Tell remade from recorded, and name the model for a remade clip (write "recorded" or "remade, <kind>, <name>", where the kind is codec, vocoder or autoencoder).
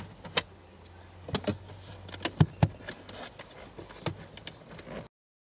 recorded